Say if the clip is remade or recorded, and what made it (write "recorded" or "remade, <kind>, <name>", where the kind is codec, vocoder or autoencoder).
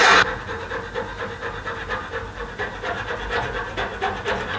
recorded